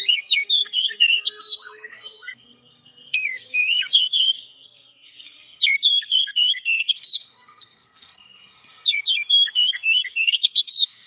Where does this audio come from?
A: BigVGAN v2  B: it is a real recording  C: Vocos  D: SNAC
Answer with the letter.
D